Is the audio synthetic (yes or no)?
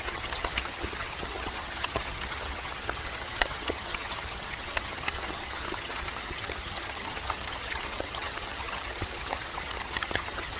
yes